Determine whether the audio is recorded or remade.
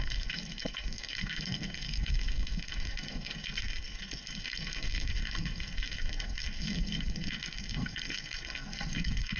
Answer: remade